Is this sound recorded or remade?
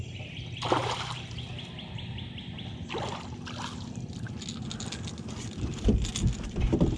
recorded